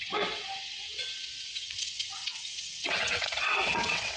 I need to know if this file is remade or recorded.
remade